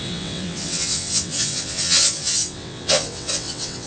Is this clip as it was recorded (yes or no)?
no